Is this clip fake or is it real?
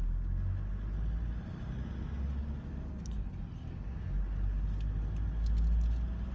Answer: real